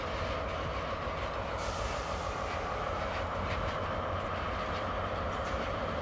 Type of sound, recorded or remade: recorded